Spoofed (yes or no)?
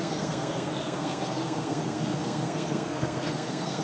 yes